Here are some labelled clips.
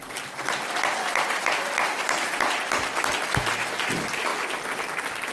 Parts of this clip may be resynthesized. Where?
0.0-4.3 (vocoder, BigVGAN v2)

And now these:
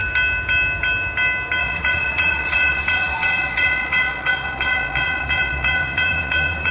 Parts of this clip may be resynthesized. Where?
1.6-6.7 (vocoder, Vocos)

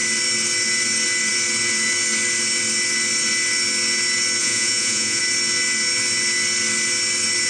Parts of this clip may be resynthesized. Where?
4.4-5.2 (vocoder, Vocos)